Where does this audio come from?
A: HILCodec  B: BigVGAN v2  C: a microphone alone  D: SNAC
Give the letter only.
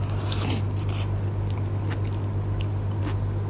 C